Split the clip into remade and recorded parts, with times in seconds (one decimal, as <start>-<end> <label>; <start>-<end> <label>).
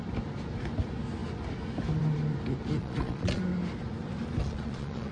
0.0-2.8 recorded; 2.8-3.4 remade; 3.4-4.4 recorded; 4.4-5.1 remade